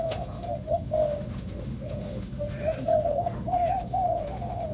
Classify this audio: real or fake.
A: fake